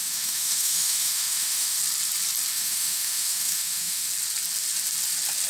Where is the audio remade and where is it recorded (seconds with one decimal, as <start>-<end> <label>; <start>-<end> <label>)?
0.0-1.8 remade; 1.8-2.5 recorded; 2.5-4.1 remade; 4.1-5.5 recorded